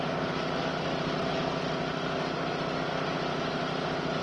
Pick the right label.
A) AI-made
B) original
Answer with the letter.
B